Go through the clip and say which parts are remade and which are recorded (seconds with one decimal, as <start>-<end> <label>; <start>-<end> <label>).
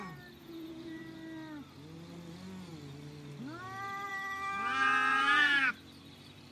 0.0-0.4 recorded; 0.4-1.0 remade; 1.0-5.1 recorded; 5.1-5.7 remade; 5.7-6.5 recorded